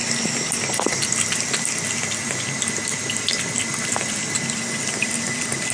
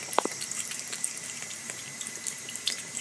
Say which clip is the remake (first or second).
second